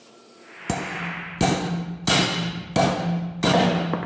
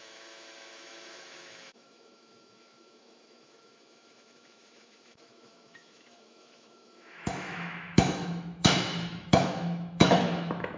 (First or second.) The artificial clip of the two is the second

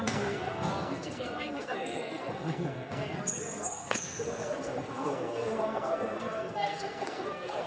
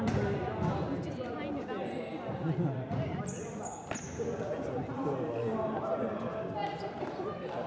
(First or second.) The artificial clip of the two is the first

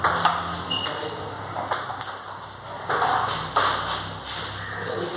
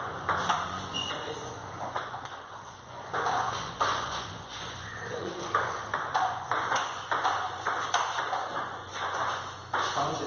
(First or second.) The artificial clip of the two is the second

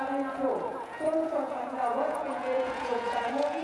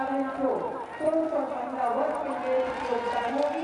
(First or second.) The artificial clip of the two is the first